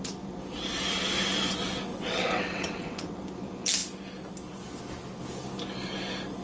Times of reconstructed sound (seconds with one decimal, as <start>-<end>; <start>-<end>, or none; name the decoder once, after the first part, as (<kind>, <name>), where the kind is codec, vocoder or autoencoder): 1.9-3.2 (vocoder, WaveNeXt)